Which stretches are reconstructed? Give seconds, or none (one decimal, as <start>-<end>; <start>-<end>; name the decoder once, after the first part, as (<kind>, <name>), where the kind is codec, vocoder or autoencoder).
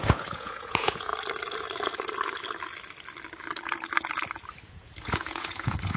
0.0-1.1 (vocoder, Vocos); 4.7-6.0